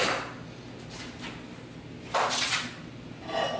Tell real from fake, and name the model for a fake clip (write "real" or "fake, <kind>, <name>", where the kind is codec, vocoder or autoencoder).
real